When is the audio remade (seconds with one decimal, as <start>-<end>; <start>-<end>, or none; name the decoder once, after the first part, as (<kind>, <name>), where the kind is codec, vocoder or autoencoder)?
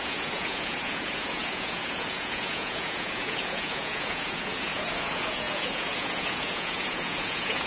0.0-7.7 (vocoder, Vocos)